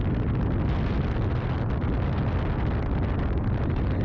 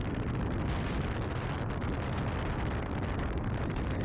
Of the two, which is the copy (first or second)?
second